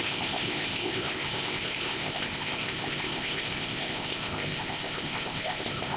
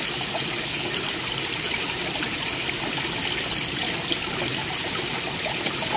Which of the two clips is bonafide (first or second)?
second